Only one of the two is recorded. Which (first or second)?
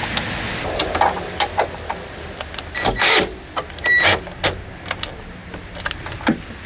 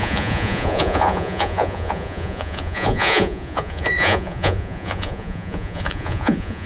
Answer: first